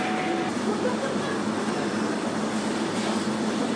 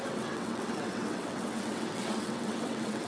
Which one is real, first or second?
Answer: first